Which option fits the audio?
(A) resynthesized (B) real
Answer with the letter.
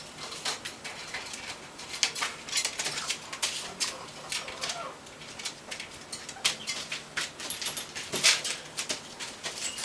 B